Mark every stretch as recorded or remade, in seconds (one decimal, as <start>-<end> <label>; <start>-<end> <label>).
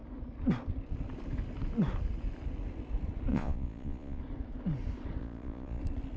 0.0-3.3 recorded; 3.3-4.2 remade; 4.2-5.2 recorded; 5.2-5.8 remade; 5.8-6.2 recorded